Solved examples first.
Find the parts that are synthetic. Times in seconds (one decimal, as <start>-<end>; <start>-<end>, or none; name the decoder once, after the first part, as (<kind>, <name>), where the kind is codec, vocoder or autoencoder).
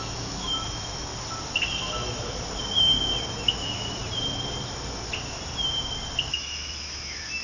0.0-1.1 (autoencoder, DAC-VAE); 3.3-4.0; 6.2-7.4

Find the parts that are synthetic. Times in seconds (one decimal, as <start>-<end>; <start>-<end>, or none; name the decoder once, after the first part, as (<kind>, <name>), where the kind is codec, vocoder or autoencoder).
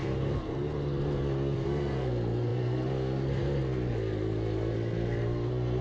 0.0-5.8 (codec, SNAC)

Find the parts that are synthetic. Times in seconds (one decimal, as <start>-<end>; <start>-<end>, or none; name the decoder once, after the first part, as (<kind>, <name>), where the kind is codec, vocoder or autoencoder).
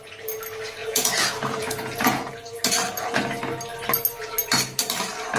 0.8-2.3 (vocoder, Vocos)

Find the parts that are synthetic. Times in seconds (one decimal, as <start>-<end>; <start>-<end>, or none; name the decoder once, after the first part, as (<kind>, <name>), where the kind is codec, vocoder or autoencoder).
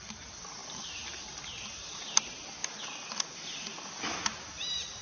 none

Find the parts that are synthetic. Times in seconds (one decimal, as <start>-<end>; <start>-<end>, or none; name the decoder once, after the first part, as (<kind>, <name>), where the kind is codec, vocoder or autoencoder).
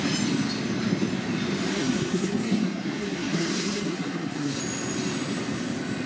1.7-4.6 (codec, SNAC)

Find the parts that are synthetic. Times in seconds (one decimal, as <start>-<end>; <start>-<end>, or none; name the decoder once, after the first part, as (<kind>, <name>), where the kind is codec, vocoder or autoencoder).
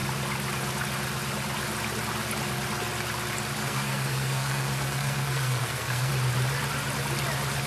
3.6-6.1 (codec, SNAC)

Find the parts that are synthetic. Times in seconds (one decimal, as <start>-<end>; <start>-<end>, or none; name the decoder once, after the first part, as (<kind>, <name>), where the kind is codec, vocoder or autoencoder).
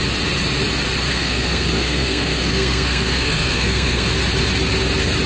1.1-4.1 (codec, SNAC)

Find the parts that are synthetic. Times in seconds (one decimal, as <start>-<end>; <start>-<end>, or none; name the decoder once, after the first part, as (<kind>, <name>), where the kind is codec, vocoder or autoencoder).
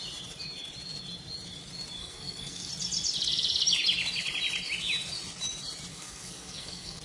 2.0-2.7 (codec, SNAC); 5.9-7.0